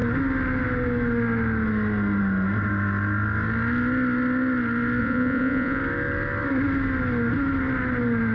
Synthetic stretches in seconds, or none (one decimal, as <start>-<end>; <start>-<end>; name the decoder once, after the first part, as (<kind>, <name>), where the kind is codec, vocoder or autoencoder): 5.0-5.8 (vocoder, Vocos)